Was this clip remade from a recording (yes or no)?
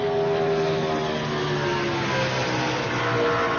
no